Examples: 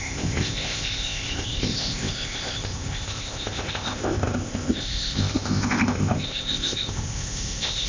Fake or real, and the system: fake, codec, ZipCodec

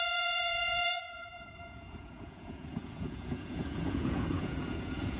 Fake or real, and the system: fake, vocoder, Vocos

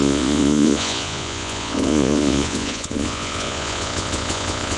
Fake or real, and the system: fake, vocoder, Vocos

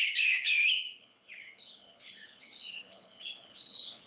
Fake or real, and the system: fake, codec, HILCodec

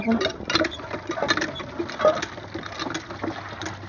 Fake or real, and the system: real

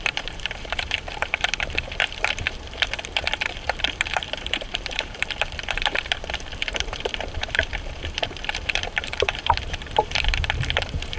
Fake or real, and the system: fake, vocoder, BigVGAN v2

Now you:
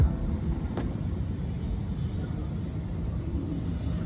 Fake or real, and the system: real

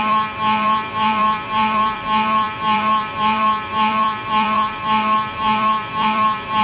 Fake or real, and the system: fake, vocoder, BigVGAN v2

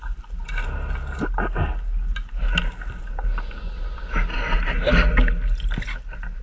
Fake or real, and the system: real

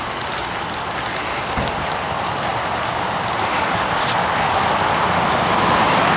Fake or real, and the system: real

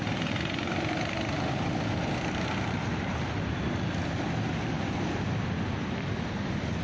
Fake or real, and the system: real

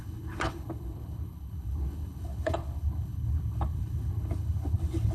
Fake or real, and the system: fake, codec, HILCodec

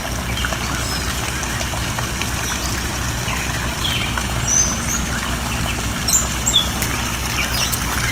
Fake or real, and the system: real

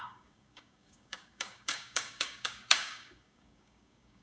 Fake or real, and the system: fake, codec, DAC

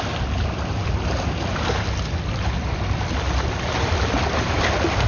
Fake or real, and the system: real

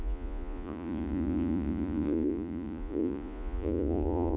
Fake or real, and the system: fake, vocoder, Vocos